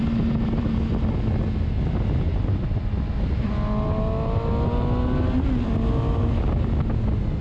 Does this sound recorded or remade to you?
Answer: recorded